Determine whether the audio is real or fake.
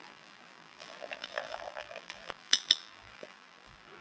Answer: fake